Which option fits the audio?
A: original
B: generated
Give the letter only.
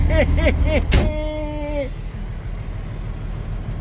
A